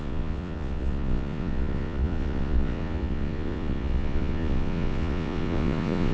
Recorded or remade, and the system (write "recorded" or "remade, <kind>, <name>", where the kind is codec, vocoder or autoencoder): remade, vocoder, Vocos